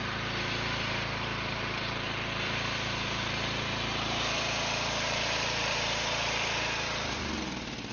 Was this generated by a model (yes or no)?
yes